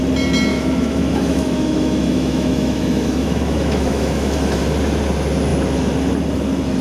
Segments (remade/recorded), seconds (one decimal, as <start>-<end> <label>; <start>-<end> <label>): 0.0-0.5 recorded; 0.5-4.6 remade; 4.6-6.8 recorded